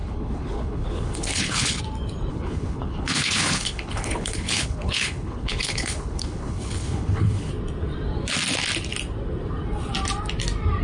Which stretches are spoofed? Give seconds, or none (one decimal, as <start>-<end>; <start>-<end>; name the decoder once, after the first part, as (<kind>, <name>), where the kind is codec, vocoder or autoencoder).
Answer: 0.0-1.8 (codec, HILCodec); 2.3-7.5